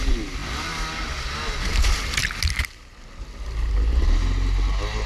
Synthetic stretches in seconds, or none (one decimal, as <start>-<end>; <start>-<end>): none